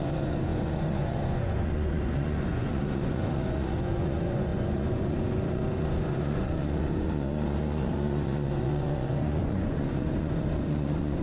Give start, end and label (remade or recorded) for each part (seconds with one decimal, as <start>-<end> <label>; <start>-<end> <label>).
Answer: 0.0-11.2 remade